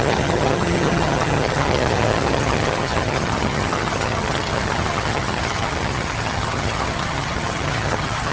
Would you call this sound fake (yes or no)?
yes